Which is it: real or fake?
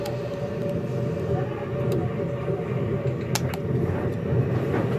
real